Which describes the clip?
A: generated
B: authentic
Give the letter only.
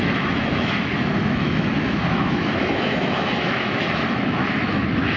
A